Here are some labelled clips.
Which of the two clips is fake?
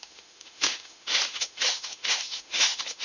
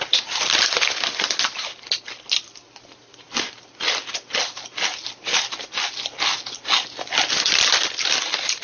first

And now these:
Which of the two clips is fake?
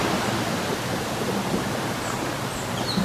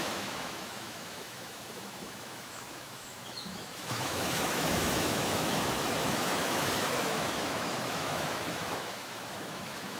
second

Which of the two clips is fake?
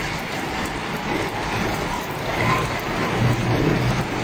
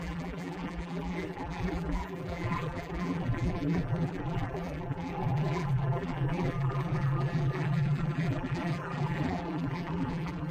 second